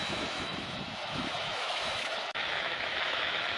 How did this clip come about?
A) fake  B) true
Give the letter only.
A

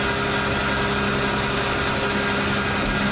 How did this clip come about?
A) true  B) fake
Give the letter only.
A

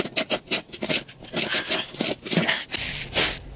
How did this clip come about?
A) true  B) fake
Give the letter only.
A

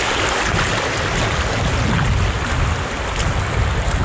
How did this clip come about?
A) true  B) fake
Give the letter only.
A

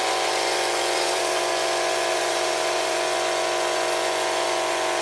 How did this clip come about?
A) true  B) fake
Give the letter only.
B